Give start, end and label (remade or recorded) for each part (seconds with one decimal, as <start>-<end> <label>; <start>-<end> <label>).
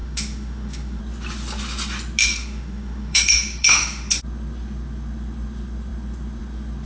0.0-1.0 remade; 1.0-2.2 recorded; 2.2-4.2 remade; 4.2-6.9 recorded